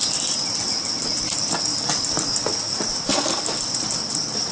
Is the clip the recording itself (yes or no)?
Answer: no